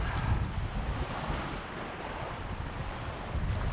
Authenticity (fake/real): real